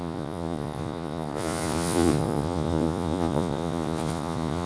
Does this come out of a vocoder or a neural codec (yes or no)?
yes